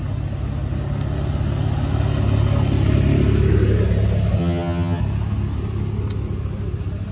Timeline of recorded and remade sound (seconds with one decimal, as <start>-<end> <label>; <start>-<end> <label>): 0.0-4.4 recorded; 4.4-5.0 remade; 5.0-7.1 recorded